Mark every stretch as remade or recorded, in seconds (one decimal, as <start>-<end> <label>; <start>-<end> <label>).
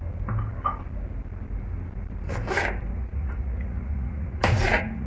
0.0-2.9 recorded; 2.9-5.1 remade